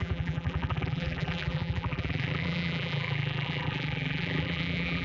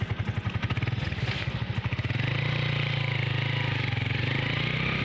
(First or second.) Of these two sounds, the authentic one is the second